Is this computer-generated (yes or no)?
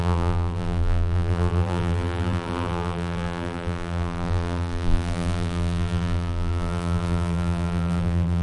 yes